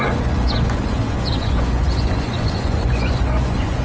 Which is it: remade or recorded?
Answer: remade